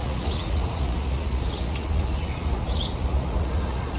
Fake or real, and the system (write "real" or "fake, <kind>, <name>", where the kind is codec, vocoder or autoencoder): fake, vocoder, Vocos